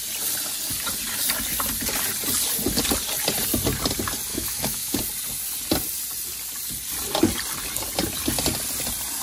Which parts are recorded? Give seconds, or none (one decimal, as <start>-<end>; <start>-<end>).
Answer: 0.0-4.3; 5.0-9.2